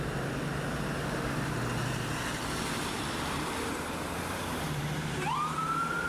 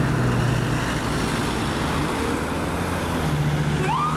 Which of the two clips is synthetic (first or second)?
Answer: first